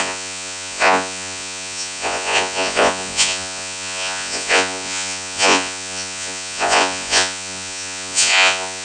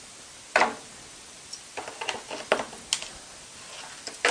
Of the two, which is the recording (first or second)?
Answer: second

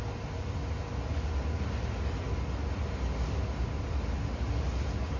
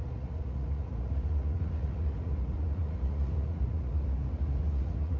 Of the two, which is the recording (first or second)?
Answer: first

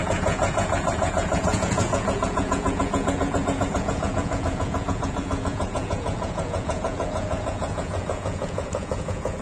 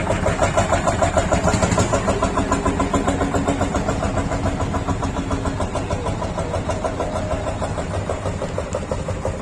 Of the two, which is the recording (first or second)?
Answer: second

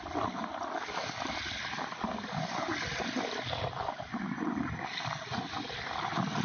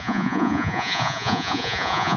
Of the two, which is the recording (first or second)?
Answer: first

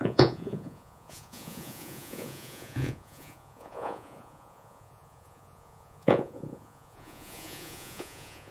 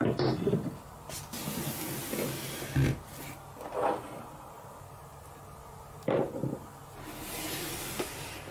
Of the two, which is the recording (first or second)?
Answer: second